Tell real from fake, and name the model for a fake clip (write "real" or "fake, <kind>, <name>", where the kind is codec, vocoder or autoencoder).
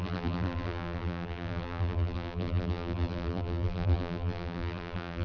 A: fake, vocoder, BigVGAN v2